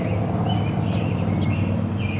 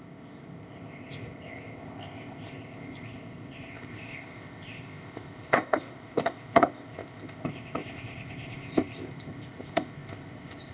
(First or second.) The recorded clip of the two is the first